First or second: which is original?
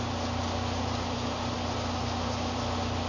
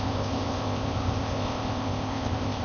first